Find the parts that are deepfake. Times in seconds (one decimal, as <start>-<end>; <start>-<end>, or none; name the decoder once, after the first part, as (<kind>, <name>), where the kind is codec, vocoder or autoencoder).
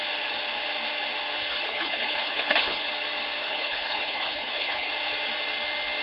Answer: 1.5-2.9 (codec, HILCodec); 3.4-4.9